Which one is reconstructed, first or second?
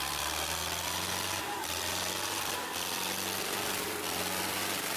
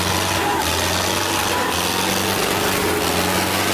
first